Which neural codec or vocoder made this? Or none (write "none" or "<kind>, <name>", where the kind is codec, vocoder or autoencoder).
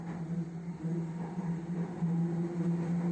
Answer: none